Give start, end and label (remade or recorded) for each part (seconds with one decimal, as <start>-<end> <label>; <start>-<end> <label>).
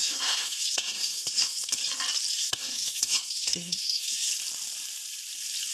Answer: 0.0-1.8 remade; 1.8-2.3 recorded; 2.3-4.3 remade; 4.3-5.7 recorded